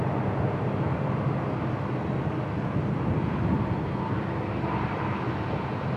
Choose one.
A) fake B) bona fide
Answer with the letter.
B